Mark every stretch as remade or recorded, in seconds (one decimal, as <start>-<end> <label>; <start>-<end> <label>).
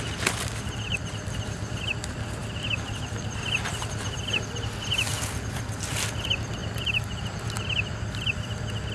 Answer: 0.0-8.9 recorded